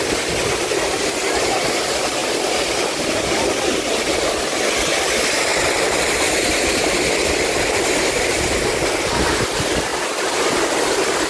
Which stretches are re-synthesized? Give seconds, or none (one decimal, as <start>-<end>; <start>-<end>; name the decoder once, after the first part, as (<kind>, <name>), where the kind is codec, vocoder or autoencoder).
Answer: 2.2-4.3 (vocoder, BigVGAN v2); 5.5-6.3; 9.9-10.6